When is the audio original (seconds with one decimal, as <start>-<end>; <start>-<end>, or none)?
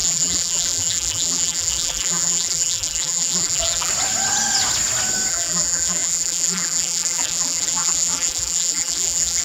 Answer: 3.9-5.3